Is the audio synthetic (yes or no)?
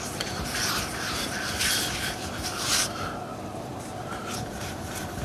no